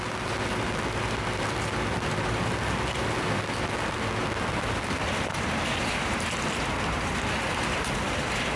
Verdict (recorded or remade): recorded